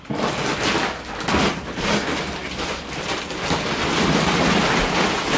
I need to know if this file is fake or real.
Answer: real